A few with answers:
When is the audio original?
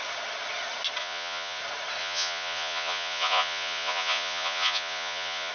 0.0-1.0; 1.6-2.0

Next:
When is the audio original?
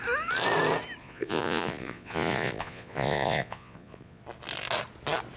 0.0-1.0; 4.2-5.4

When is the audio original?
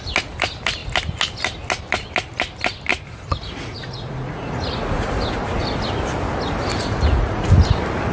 0.0-2.9; 5.1-6.7; 7.5-8.1